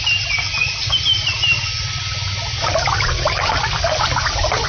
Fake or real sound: real